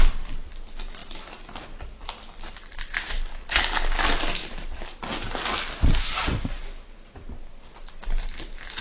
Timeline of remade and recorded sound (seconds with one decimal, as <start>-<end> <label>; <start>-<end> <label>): 0.0-8.8 recorded